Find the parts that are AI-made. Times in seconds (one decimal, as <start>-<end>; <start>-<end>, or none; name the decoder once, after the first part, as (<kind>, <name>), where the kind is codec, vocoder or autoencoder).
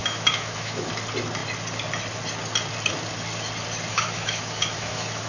0.0-0.9 (autoencoder, DAC-VAE); 3.9-5.3